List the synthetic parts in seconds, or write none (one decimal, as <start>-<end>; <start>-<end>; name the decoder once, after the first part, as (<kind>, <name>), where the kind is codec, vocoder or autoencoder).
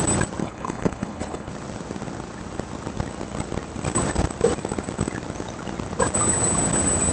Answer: 0.4-1.5 (codec, HILCodec)